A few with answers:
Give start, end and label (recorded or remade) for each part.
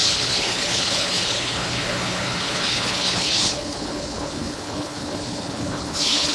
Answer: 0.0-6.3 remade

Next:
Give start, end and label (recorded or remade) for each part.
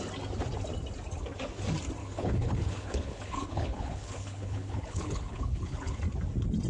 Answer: 0.0-2.0 recorded; 2.0-6.0 remade; 6.0-6.7 recorded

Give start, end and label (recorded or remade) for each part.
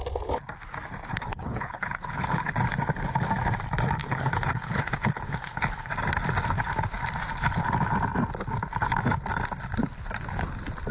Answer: 0.0-1.1 recorded; 1.1-2.5 remade; 2.5-4.0 recorded; 4.0-5.9 remade; 5.9-10.9 recorded